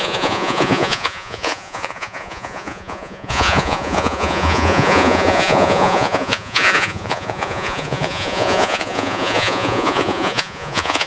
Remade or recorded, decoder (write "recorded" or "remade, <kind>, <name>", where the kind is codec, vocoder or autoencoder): remade, vocoder, Vocos